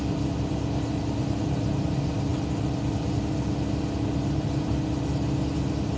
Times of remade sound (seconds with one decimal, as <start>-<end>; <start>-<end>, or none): none